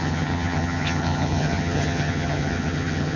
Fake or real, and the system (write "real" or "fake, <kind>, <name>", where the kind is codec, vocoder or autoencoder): fake, vocoder, HiFi-GAN